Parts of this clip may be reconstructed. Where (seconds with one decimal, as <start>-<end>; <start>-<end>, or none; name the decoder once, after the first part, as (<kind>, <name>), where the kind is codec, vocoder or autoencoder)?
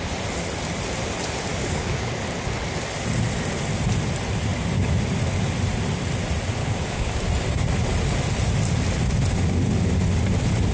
1.5-2.2 (codec, DAC); 6.6-7.3